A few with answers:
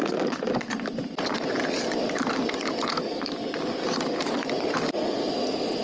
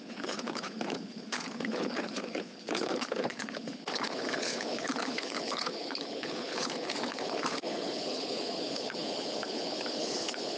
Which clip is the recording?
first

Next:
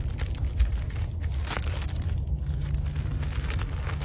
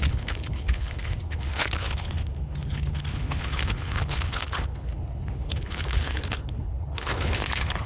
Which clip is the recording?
first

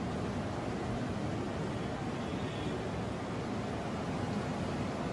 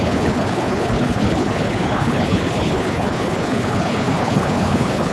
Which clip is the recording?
first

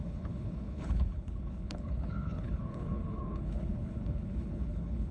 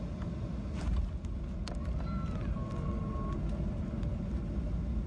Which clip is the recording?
second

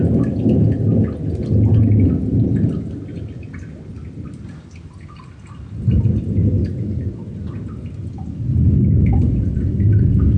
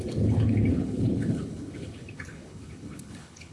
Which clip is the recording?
first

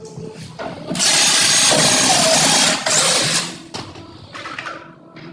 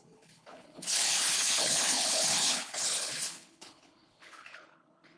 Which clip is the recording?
first